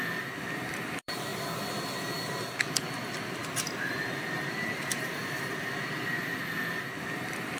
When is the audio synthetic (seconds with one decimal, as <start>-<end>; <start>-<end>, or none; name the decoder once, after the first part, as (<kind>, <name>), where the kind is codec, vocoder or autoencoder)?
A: 0.0-1.3 (vocoder, BigVGAN v2); 2.8-3.4; 4.1-7.6